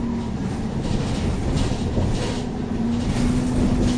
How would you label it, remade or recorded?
recorded